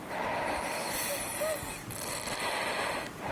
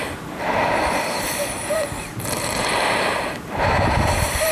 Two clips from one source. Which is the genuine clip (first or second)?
first